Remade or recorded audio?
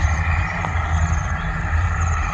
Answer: remade